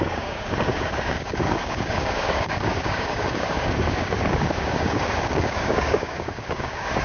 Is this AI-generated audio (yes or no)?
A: yes